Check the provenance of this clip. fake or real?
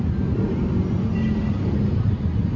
real